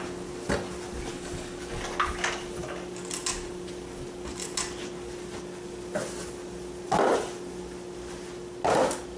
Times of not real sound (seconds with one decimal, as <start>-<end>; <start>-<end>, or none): 1.1-1.8